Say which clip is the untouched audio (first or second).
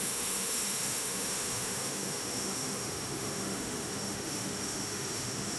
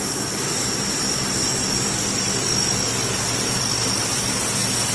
second